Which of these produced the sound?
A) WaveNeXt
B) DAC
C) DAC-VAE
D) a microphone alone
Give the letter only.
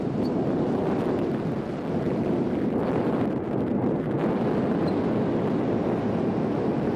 D